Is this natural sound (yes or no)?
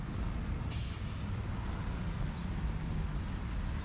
no